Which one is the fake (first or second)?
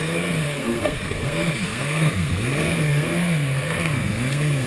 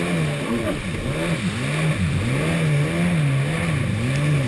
first